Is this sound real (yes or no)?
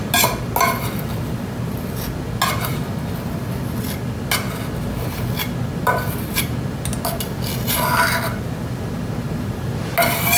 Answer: yes